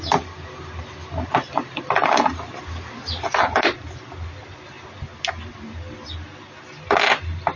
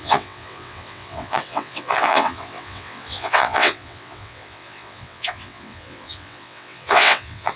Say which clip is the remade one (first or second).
second